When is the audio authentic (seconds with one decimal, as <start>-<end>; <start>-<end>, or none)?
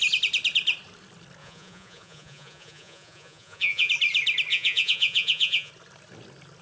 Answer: 0.0-1.4; 3.9-4.5; 5.7-6.6